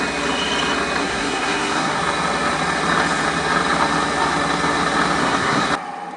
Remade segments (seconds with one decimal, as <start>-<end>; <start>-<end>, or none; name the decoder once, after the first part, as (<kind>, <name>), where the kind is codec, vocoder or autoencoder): 1.0-2.0 (codec, SNAC); 5.2-5.7

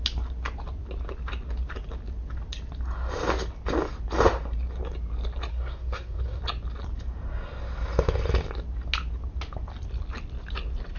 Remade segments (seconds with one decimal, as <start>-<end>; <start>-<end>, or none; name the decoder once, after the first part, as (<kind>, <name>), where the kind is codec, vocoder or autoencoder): 5.5-6.4 (codec, SNAC)

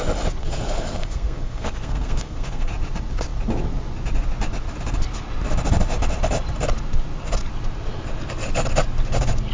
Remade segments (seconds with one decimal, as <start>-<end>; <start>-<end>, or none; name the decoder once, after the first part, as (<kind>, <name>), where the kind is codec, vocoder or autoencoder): 0.4-2.7 (codec, SNAC)

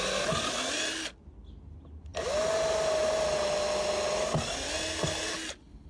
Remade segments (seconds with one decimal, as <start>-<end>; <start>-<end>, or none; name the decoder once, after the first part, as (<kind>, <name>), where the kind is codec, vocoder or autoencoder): none

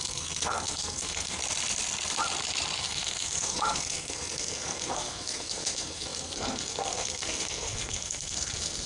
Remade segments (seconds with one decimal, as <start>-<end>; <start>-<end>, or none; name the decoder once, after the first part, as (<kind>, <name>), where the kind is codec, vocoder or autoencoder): 0.0-1.4 (codec, SNAC); 2.8-8.9